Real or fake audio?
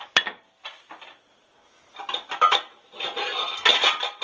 real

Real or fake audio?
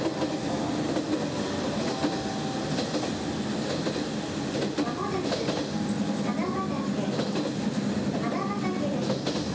real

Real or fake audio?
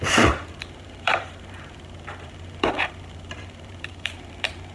fake